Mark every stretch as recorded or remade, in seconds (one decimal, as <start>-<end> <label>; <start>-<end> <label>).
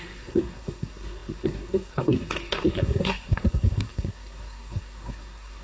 0.0-5.6 remade